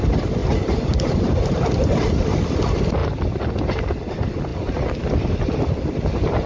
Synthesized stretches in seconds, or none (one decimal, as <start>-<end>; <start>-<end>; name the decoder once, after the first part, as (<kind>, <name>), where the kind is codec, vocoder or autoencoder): none